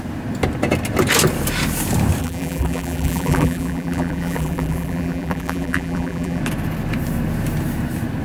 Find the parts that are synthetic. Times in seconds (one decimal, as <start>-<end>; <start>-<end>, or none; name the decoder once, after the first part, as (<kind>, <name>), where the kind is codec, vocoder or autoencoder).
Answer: 2.2-6.4 (vocoder, BigVGAN v2)